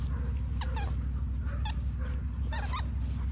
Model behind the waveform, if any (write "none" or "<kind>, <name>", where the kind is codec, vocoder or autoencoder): none